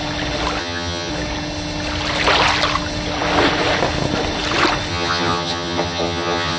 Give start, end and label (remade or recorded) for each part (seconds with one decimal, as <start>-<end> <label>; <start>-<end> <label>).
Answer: 0.0-0.6 recorded; 0.6-1.1 remade; 1.1-4.9 recorded; 4.9-6.6 remade